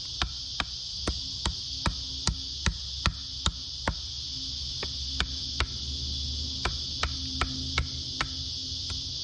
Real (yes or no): yes